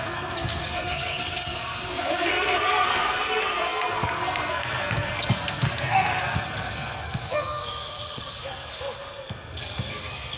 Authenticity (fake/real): fake